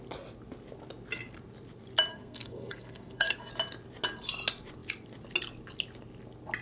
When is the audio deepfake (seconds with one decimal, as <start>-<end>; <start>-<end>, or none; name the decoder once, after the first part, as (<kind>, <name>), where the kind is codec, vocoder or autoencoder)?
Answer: 2.1-3.4 (codec, SNAC)